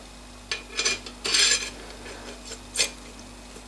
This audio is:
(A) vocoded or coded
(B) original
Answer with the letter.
B